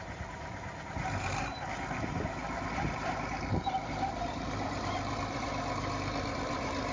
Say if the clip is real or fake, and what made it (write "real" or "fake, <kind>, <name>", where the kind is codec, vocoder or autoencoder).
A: fake, vocoder, BigVGAN v2